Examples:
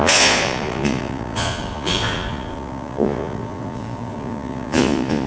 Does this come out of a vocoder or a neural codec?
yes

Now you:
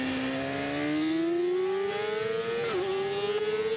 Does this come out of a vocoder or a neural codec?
no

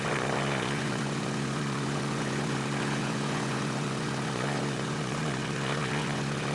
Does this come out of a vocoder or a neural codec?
yes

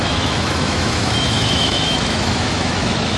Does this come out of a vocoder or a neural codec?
yes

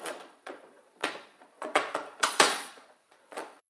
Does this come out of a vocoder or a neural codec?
yes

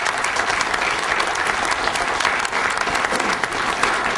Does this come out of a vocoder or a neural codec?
no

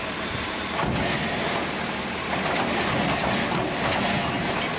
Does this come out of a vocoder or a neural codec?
no